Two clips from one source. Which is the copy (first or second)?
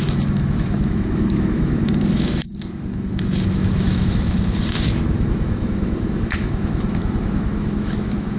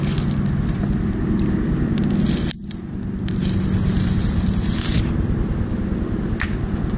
first